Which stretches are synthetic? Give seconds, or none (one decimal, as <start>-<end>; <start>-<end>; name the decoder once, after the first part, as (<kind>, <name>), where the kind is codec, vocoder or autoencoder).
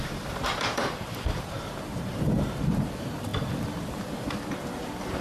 0.0-3.3 (vocoder, BigVGAN v2); 3.8-5.2